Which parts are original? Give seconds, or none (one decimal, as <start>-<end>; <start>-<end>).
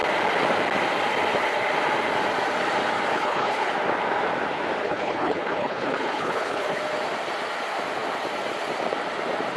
0.0-3.1; 3.7-4.8; 6.8-9.6